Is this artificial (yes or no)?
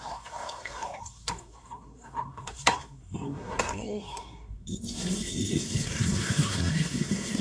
yes